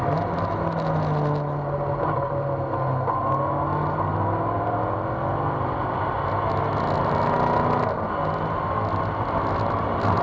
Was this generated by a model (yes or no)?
no